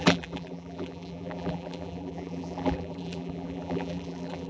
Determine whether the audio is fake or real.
fake